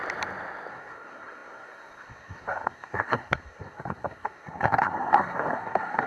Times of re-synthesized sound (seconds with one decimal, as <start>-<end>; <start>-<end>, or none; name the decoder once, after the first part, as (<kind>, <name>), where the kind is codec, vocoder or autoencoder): 0.7-6.1 (codec, SNAC)